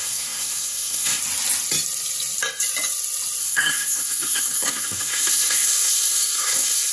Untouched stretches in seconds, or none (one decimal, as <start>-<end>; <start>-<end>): 1.2-3.4